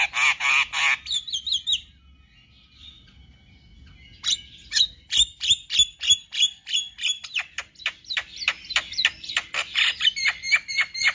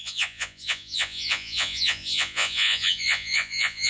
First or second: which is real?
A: first